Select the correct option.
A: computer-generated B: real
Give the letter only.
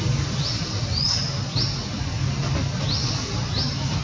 B